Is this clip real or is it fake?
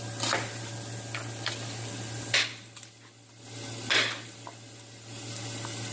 real